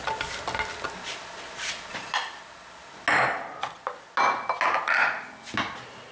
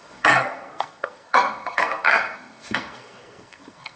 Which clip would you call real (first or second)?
first